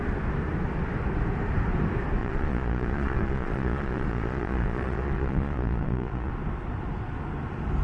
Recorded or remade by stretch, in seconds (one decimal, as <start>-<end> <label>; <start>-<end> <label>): 0.0-2.2 recorded; 2.2-6.3 remade; 6.3-7.8 recorded